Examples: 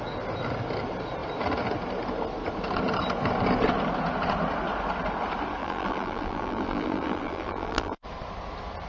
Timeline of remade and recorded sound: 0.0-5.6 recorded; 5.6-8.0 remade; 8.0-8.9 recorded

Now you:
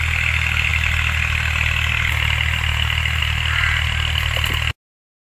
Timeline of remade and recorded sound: 0.0-5.3 recorded

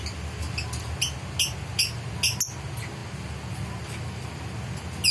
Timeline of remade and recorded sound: 0.0-5.1 recorded

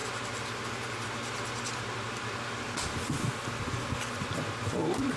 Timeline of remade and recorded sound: 0.0-5.2 recorded

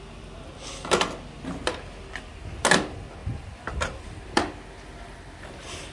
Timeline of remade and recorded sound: 0.0-3.2 recorded; 3.2-4.2 remade; 4.2-5.9 recorded

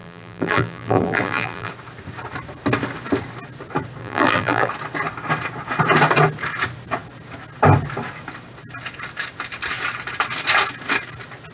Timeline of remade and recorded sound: 0.0-1.7 remade; 1.7-4.0 recorded; 4.0-4.7 remade; 4.7-11.5 recorded